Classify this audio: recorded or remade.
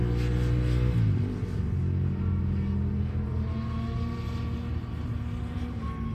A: recorded